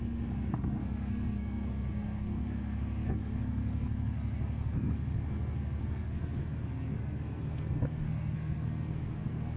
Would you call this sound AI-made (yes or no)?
yes